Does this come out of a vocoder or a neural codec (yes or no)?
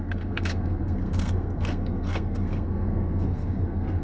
yes